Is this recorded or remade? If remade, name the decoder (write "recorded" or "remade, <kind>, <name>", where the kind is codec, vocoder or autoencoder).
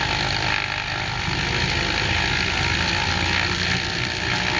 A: recorded